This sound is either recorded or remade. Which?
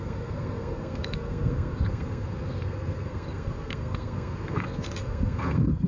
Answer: remade